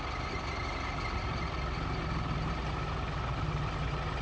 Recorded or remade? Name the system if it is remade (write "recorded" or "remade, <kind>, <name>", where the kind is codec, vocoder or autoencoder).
recorded